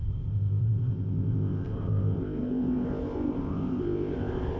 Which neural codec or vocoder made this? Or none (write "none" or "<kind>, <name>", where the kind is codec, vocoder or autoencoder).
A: codec, ZipCodec